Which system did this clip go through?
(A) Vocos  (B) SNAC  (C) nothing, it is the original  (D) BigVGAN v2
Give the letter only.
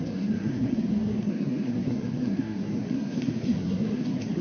B